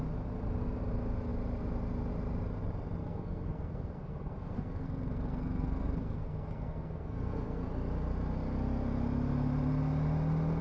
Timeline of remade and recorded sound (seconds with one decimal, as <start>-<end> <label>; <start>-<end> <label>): 0.0-3.0 recorded; 3.0-7.7 remade; 7.7-10.6 recorded